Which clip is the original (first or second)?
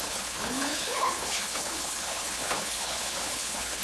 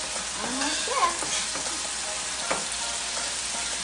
second